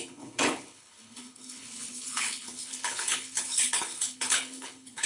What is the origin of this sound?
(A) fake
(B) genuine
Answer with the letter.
A